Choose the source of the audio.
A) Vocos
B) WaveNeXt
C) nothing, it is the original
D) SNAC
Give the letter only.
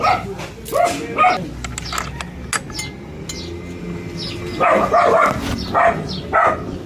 C